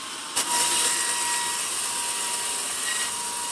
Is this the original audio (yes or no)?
yes